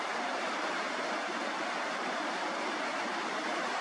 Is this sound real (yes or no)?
no